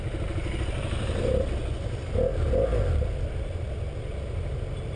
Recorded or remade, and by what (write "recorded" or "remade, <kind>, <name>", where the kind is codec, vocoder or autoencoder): recorded